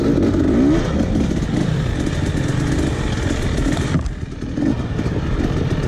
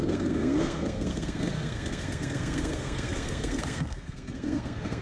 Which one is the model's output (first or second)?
second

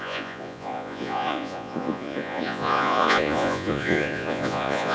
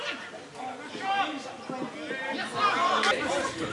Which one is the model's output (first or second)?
first